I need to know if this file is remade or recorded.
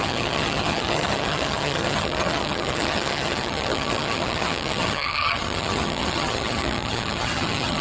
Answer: remade